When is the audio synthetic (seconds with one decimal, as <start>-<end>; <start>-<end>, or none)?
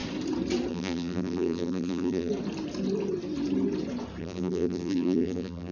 0.7-2.3; 4.2-5.7